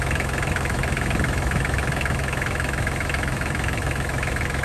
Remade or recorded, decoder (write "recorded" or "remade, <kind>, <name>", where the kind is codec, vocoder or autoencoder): remade, autoencoder, DAC-VAE